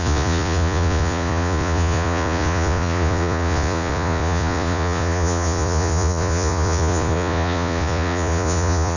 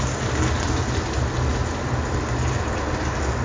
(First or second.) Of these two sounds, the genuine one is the second